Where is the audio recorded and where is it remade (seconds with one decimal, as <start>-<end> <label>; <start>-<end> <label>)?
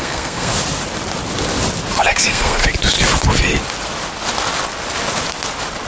0.0-0.5 remade; 0.5-2.2 recorded; 2.2-2.6 remade; 2.6-5.9 recorded